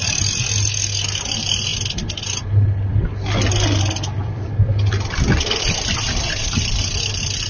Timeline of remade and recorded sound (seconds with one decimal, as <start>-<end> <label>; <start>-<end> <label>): 0.0-4.2 recorded; 4.2-5.6 remade; 5.6-7.5 recorded